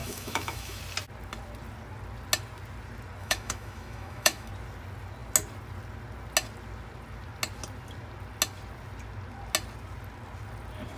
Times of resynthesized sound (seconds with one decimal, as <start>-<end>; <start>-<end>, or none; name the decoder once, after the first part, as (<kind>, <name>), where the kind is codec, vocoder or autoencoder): 0.0-0.8 (autoencoder, DAC-VAE); 3.2-4.5